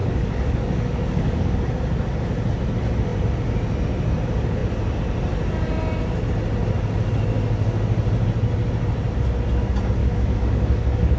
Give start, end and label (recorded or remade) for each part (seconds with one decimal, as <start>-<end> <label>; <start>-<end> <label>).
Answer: 0.0-1.5 remade; 1.5-10.0 recorded; 10.0-11.2 remade